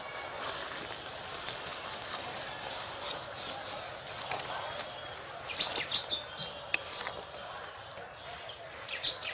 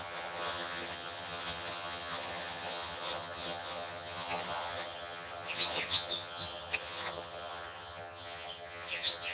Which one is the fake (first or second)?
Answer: second